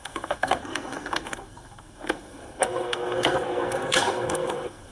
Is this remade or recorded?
remade